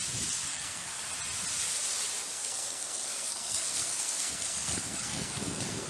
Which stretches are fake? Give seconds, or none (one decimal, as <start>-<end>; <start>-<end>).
0.5-1.0; 2.3-5.9